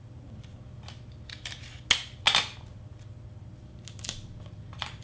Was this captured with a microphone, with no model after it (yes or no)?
yes